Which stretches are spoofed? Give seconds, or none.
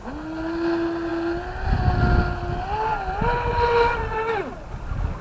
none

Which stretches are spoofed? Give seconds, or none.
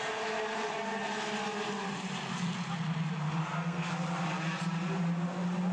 3.4-3.9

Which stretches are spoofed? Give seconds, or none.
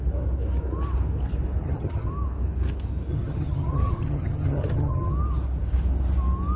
1.6-2.1; 3.1-5.1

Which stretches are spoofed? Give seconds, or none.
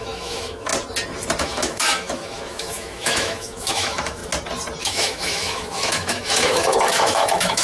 0.0-0.7; 1.4-4.2; 4.8-7.6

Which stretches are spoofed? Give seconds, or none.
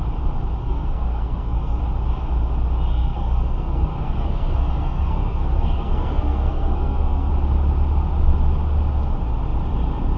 0.6-1.8; 2.9-7.3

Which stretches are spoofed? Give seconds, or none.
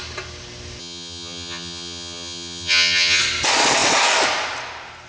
0.8-3.2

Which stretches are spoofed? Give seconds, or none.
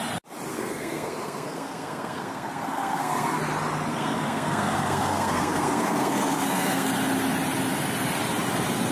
0.5-3.4; 3.9-6.9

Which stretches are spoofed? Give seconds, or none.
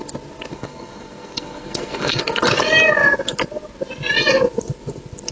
0.5-2.2